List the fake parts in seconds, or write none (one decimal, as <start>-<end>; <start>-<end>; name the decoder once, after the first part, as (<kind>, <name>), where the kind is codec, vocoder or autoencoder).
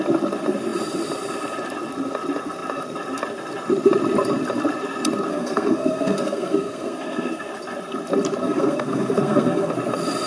5.3-7.5 (codec, SNAC); 8.4-9.7